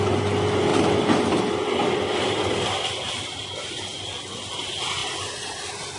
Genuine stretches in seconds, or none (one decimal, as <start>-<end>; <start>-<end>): 0.0-0.7; 3.1-3.9; 4.6-6.0